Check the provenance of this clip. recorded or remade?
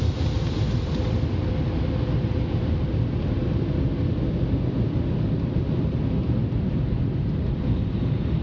recorded